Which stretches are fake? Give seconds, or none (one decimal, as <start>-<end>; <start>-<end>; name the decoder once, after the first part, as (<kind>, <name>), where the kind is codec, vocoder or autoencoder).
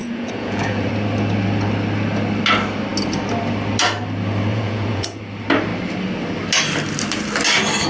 0.0-0.9 (vocoder, Vocos); 4.5-5.2